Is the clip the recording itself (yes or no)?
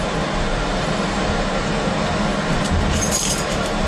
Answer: no